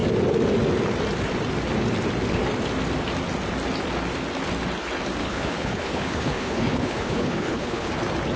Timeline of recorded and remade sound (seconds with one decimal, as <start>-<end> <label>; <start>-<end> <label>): 0.0-5.2 recorded; 5.2-7.9 remade; 7.9-8.4 recorded